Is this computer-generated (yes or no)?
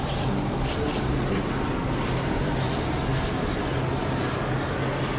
no